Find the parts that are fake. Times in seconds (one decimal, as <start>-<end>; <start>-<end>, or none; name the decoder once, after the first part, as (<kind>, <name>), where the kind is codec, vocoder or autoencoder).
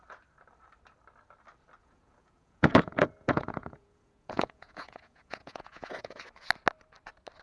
1.8-6.2 (vocoder, Vocos)